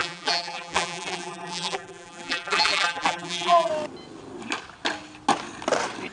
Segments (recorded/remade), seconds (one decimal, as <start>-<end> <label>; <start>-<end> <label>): 0.0-3.7 remade; 3.7-6.1 recorded